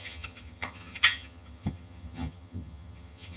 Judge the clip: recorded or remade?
remade